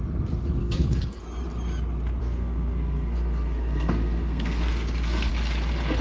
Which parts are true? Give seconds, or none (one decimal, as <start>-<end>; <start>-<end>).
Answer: 0.0-0.6; 1.2-2.2; 5.3-6.0